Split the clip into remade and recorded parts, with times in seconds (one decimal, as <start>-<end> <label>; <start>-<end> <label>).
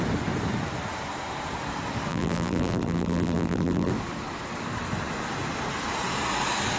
0.0-2.1 recorded; 2.1-3.9 remade; 3.9-6.8 recorded